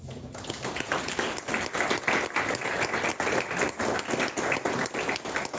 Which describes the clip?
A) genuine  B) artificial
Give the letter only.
A